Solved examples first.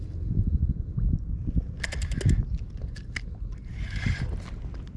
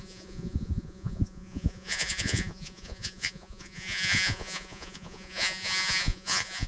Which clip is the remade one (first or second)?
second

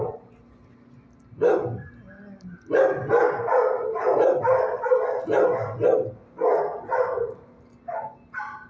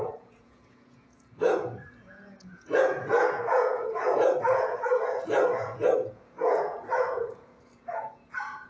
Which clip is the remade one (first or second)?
second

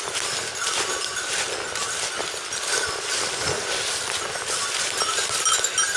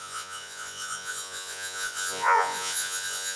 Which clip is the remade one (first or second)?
second